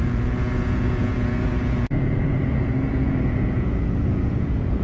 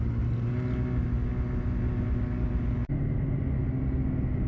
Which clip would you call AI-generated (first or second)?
first